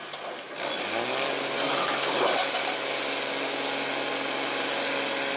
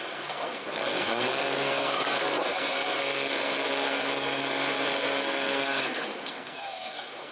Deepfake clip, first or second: second